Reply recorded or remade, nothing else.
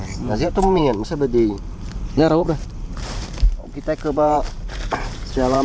remade